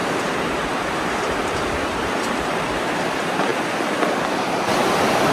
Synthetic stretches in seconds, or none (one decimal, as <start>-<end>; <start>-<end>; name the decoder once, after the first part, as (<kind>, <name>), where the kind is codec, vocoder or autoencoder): 0.0-3.5 (vocoder, BigVGAN v2); 4.3-5.3